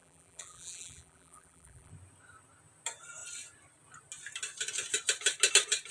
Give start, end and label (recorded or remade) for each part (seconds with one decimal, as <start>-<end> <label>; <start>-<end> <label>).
0.0-1.9 remade; 1.9-5.9 recorded